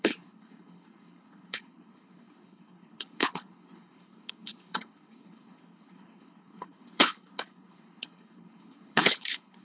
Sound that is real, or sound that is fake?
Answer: fake